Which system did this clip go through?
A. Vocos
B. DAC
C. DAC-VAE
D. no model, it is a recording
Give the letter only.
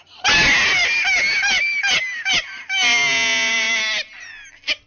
D